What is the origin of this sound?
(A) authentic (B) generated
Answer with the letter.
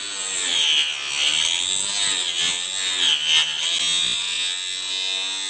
A